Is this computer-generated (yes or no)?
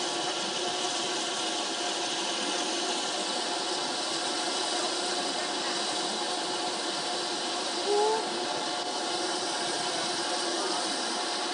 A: no